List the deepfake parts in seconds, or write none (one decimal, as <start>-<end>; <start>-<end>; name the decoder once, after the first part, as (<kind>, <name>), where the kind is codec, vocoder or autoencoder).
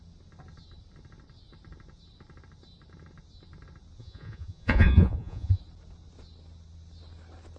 4.0-5.6 (vocoder, Vocos)